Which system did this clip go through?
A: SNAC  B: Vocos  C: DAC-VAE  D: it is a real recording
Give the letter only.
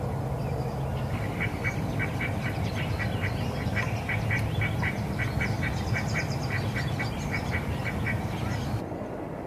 D